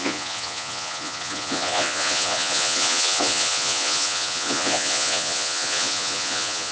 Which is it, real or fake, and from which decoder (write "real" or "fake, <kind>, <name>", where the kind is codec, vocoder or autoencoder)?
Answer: fake, vocoder, Vocos